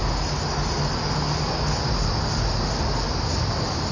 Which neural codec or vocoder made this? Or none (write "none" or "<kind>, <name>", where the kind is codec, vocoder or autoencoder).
none